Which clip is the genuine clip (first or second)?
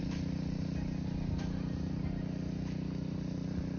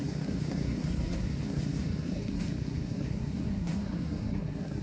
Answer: first